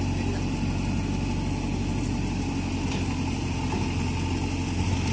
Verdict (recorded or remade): recorded